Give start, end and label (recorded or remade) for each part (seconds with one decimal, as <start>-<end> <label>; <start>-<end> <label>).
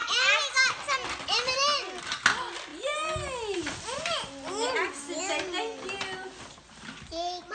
0.0-7.5 recorded